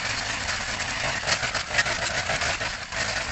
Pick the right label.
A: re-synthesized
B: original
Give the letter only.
B